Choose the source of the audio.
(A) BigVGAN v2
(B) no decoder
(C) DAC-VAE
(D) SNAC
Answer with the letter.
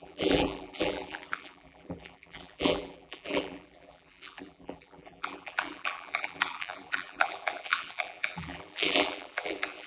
A